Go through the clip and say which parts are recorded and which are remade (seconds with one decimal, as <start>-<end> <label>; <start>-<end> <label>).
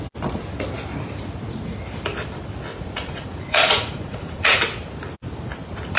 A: 0.0-2.7 recorded; 2.7-4.6 remade; 4.6-6.0 recorded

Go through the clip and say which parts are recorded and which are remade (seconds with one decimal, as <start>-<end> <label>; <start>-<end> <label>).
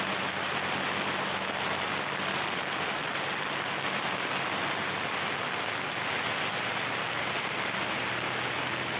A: 0.0-9.0 recorded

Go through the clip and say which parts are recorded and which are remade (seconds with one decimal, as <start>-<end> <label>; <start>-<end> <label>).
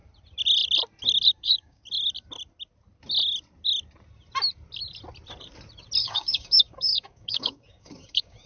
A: 0.0-1.4 recorded; 1.4-1.8 remade; 1.8-6.0 recorded; 6.0-8.5 remade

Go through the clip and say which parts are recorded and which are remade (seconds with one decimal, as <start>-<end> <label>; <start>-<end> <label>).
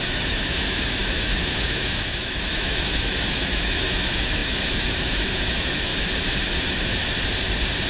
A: 0.0-5.9 remade; 5.9-7.9 recorded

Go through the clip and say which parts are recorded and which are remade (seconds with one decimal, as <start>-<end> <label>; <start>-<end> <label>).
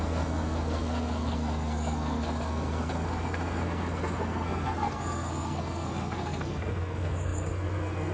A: 0.0-8.1 remade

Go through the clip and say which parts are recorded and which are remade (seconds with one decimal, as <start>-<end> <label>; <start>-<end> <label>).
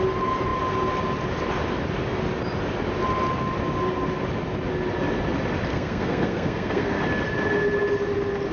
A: 0.0-5.7 recorded; 5.7-7.0 remade; 7.0-8.5 recorded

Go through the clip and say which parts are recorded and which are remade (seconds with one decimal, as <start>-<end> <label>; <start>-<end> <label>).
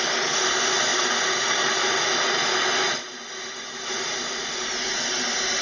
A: 0.0-5.6 recorded